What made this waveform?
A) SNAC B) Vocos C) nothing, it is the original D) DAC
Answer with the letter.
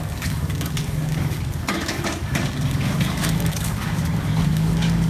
D